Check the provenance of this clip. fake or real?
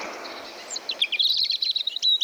fake